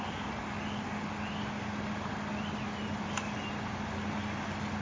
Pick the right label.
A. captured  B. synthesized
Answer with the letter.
A